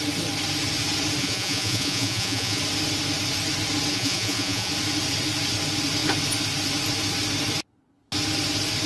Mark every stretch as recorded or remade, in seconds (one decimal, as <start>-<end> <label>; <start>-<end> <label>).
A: 0.0-1.2 recorded; 1.2-2.6 remade; 2.6-3.9 recorded; 3.9-4.7 remade; 4.7-8.9 recorded

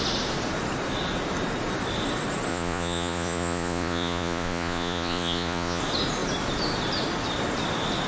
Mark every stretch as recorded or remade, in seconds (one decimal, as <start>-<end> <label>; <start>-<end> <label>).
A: 0.0-2.5 recorded; 2.5-5.8 remade; 5.8-8.1 recorded

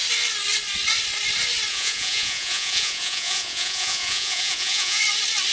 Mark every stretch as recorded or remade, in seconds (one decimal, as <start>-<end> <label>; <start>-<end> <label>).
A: 0.0-1.7 recorded; 1.7-5.0 remade; 5.0-5.5 recorded

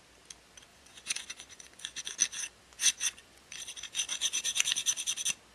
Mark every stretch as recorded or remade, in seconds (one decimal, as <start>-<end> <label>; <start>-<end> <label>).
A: 0.0-0.7 recorded; 0.7-2.0 remade; 2.0-2.7 recorded; 2.7-4.6 remade; 4.6-5.5 recorded

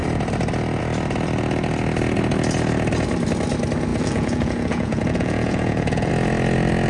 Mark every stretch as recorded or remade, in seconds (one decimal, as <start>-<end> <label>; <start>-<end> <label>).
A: 0.0-3.9 recorded; 3.9-6.1 remade; 6.1-6.9 recorded

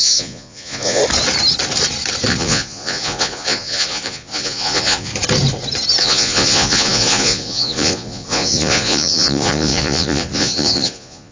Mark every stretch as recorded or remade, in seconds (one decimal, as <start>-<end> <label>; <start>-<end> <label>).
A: 0.0-1.0 remade; 1.0-2.3 recorded; 2.3-5.1 remade; 5.1-6.0 recorded; 6.0-11.3 remade

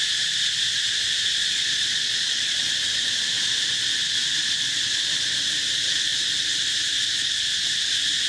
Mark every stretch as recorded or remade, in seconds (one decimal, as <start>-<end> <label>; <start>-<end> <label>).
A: 0.0-1.3 recorded; 1.3-2.6 remade; 2.6-8.3 recorded